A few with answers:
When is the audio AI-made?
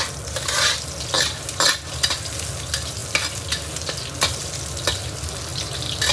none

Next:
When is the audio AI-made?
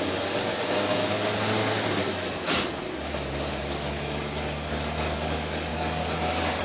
0.0-0.5 (codec, DAC); 3.5-6.6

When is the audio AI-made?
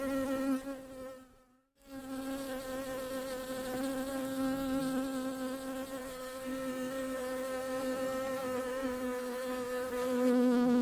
1.5-2.0 (codec, SNAC); 4.1-4.8; 6.0-10.8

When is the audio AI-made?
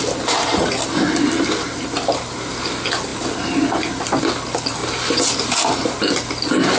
none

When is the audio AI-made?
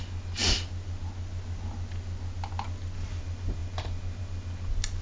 none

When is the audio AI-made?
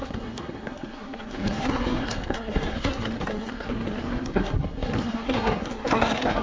0.0-6.4 (codec, SNAC)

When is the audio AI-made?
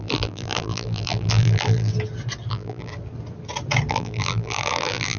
0.0-1.9 (vocoder, BigVGAN v2); 2.5-2.9; 3.9-5.2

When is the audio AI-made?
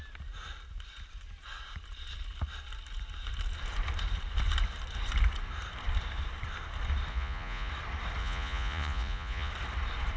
7.1-7.7 (vocoder, Vocos); 8.2-9.5